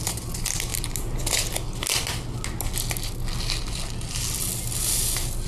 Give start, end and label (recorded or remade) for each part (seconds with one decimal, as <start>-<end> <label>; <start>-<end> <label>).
0.0-5.5 recorded